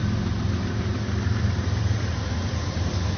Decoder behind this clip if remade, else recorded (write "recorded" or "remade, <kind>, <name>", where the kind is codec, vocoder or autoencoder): recorded